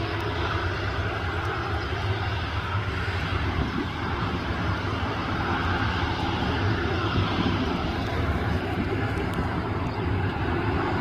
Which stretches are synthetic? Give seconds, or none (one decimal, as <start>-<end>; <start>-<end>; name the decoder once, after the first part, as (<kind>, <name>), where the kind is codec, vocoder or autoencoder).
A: 3.3-4.4 (vocoder, BigVGAN v2); 7.0-11.0